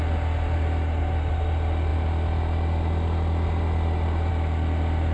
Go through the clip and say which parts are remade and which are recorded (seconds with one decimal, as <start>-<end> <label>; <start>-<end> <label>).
0.0-5.1 recorded